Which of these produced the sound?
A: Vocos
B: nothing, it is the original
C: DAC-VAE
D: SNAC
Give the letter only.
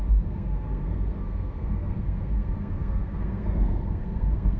D